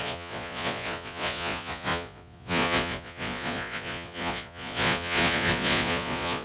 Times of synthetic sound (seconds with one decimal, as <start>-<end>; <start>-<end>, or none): 0.0-6.4